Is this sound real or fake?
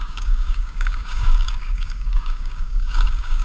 fake